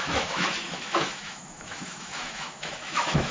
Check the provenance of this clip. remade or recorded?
remade